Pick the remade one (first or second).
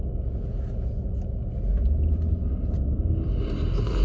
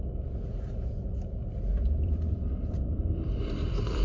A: second